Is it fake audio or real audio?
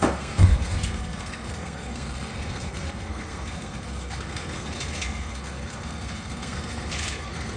fake